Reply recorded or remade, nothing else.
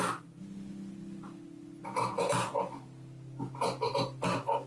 recorded